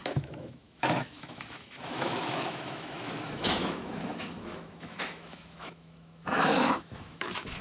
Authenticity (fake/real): fake